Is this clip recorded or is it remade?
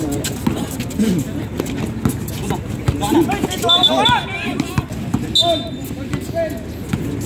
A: recorded